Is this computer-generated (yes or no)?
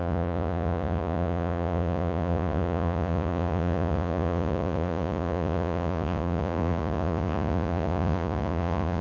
yes